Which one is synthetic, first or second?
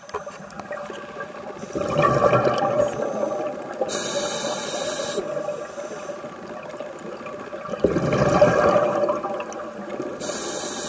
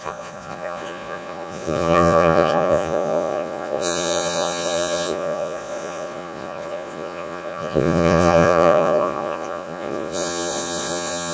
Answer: second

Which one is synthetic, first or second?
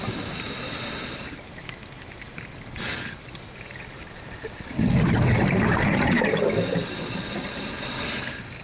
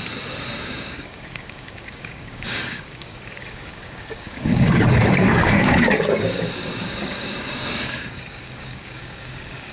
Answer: second